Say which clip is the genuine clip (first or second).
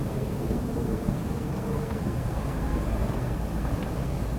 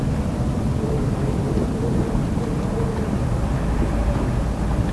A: second